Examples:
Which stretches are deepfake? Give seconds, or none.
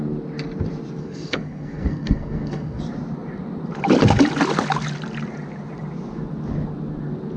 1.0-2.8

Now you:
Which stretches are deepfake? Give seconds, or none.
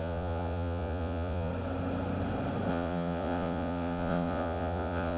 0.0-1.5; 2.7-5.2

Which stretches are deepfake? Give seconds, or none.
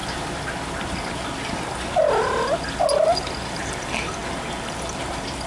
none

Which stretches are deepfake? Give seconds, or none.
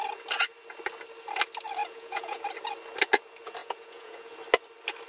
1.8-2.4; 3.6-4.3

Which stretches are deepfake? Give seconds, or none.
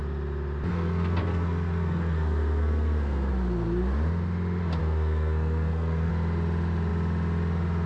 0.7-3.3; 4.8-6.1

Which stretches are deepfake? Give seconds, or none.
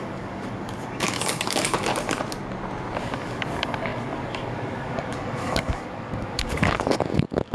0.0-1.9; 3.0-7.5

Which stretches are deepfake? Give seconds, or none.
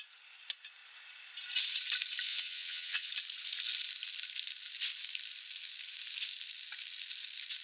2.3-3.1